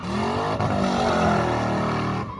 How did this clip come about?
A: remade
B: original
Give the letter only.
B